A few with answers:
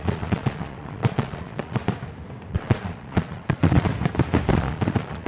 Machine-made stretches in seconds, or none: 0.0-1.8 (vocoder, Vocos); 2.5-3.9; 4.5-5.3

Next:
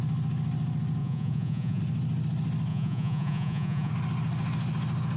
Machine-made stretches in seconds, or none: 1.0-1.8 (vocoder, Vocos); 2.7-3.9

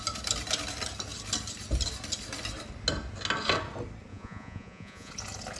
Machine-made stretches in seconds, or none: 4.1-5.1 (vocoder, Vocos)

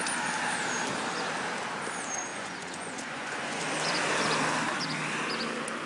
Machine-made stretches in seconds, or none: 2.3-3.6 (vocoder, Vocos)

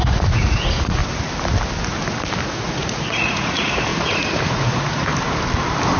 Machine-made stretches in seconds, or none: 0.0-1.0 (vocoder, Vocos); 2.4-5.1